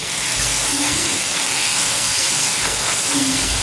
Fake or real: fake